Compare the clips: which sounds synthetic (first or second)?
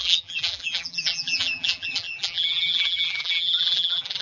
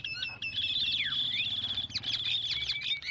first